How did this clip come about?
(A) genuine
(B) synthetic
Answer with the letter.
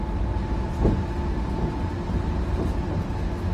A